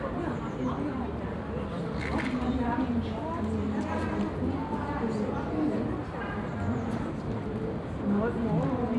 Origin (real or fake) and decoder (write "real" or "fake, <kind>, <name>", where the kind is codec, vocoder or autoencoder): real